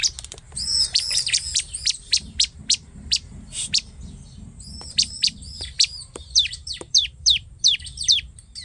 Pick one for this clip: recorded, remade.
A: remade